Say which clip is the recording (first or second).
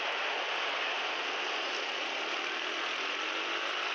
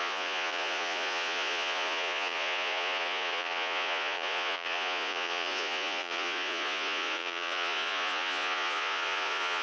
first